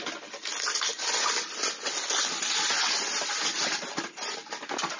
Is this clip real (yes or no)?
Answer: yes